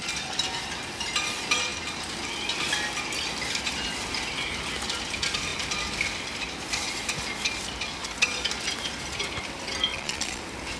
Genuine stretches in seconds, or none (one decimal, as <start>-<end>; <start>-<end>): 0.0-9.9; 10.4-10.8